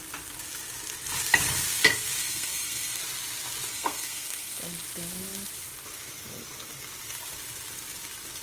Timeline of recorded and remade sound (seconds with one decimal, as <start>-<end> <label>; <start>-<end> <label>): 0.0-2.2 recorded; 2.2-3.0 remade; 3.0-3.7 recorded; 3.7-4.6 remade; 4.6-8.4 recorded